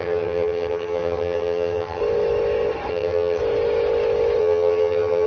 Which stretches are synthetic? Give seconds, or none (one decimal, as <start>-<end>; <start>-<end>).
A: 0.0-2.0; 2.9-3.4; 4.4-5.3